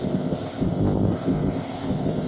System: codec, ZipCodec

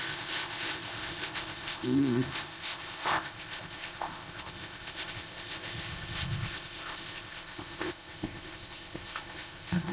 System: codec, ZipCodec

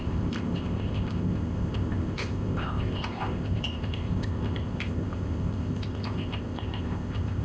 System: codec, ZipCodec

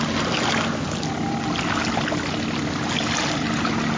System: none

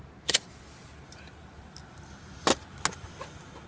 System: none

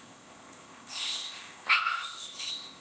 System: codec, ZipCodec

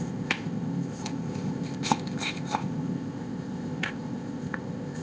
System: codec, ZipCodec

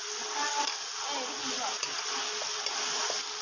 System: none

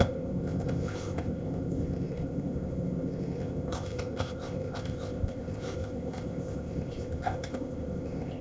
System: codec, ZipCodec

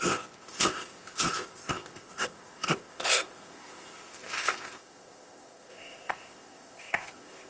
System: codec, ZipCodec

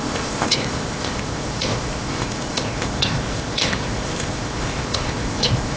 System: codec, ZipCodec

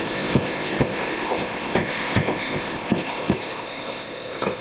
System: codec, ZipCodec